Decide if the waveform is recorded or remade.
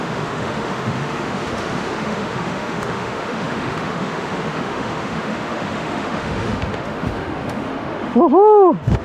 remade